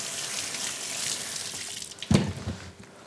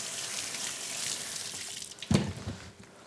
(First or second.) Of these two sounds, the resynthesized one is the second